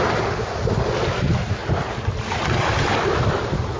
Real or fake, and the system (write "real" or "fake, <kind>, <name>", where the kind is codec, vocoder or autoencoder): real